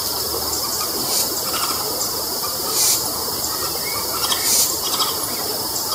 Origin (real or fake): fake